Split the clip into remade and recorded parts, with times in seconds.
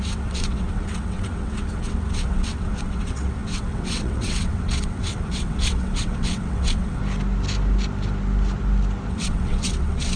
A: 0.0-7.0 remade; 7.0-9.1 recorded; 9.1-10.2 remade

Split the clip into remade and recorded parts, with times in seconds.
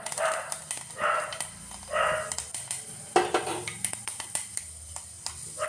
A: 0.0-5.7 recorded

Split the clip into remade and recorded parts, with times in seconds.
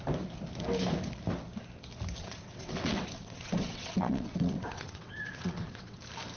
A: 0.0-2.2 recorded; 2.2-6.0 remade; 6.0-6.4 recorded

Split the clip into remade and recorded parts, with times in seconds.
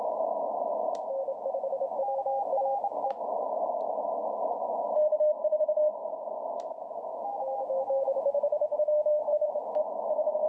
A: 0.0-10.5 recorded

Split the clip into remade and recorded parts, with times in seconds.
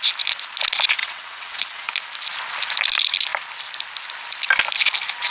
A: 0.0-1.0 recorded; 1.0-1.9 remade; 1.9-5.3 recorded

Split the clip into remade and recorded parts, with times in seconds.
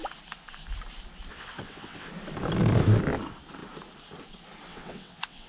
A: 0.0-1.3 recorded; 1.3-2.1 remade; 2.1-4.7 recorded; 4.7-5.5 remade